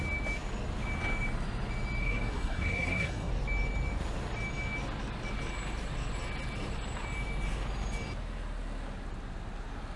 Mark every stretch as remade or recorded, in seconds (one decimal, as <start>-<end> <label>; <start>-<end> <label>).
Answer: 0.0-2.0 recorded; 2.0-3.3 remade; 3.3-10.0 recorded